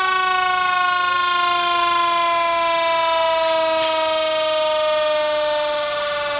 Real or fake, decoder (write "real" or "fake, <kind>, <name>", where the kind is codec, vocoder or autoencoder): real